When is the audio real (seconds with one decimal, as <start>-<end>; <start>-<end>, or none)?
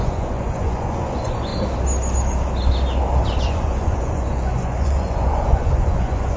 1.5-3.4